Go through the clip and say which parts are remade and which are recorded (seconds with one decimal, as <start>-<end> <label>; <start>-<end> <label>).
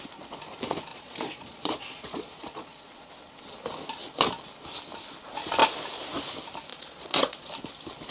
0.0-0.9 recorded; 0.9-3.1 remade; 3.1-6.7 recorded; 6.7-7.5 remade; 7.5-8.1 recorded